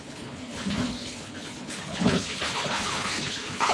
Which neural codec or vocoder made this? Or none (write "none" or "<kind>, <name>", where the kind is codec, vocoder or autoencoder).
codec, HILCodec